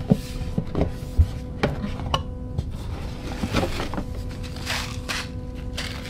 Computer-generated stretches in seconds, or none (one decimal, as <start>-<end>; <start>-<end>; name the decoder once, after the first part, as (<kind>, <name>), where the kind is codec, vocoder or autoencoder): none